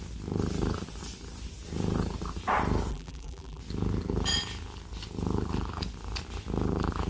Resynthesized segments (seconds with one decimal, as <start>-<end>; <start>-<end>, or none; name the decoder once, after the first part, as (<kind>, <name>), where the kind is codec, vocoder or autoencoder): 2.9-3.6 (vocoder, BigVGAN v2)

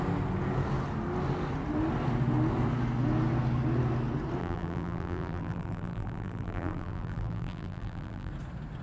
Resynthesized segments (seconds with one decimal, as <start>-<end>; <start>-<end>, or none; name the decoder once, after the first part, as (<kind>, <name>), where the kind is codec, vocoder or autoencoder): 4.4-8.3 (vocoder, BigVGAN v2)

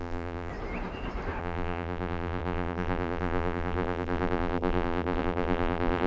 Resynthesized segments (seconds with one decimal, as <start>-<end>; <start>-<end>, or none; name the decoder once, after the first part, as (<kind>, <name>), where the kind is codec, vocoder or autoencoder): 0.0-0.5 (vocoder, BigVGAN v2); 1.4-6.1